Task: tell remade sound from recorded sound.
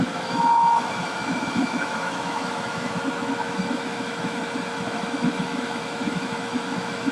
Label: remade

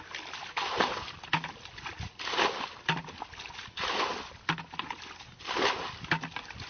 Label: recorded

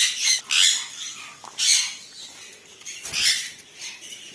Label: recorded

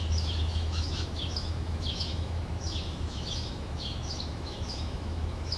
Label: remade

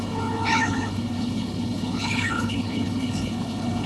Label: remade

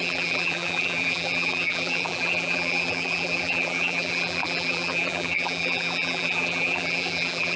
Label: remade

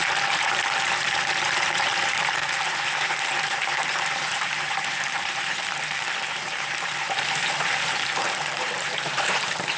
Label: remade